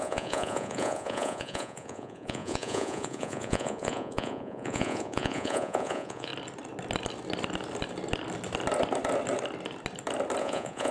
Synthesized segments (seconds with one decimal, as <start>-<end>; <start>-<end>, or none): 0.0-6.3; 10.4-10.9